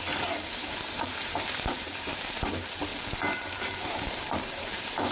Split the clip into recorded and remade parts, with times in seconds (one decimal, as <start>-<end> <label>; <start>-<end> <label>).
0.0-2.9 remade; 2.9-3.6 recorded; 3.6-5.1 remade